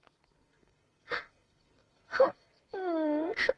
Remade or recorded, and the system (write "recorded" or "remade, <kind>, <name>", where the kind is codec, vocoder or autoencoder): remade, codec, SNAC